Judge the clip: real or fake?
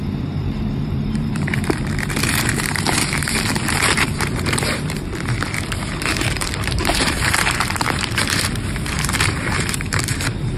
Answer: fake